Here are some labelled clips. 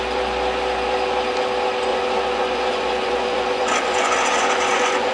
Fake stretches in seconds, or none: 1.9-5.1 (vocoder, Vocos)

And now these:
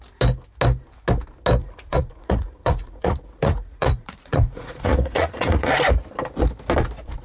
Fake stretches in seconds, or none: 1.6-5.9 (vocoder, Vocos)